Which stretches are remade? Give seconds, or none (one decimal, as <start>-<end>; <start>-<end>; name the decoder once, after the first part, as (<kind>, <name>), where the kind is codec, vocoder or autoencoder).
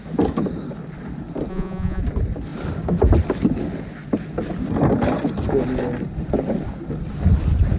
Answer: 1.5-2.0 (vocoder, Vocos)